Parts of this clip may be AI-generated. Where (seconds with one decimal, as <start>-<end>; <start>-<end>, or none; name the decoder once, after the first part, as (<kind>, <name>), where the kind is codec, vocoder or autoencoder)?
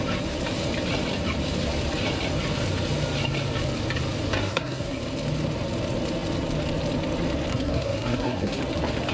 4.4-5.0 (codec, SNAC); 7.5-8.6